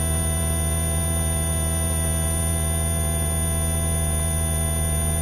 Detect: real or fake real